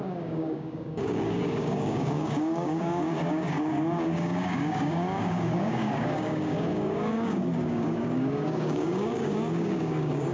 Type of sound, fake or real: fake